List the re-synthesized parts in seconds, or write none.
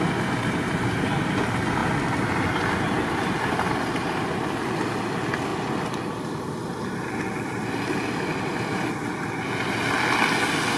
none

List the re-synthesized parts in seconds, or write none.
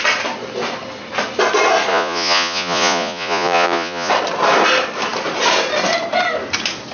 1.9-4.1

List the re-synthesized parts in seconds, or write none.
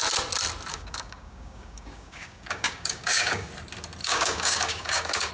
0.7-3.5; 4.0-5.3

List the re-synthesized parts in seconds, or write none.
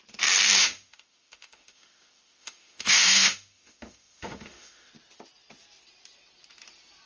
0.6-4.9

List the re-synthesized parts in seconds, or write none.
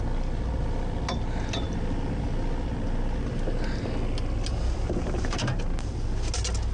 4.5-5.6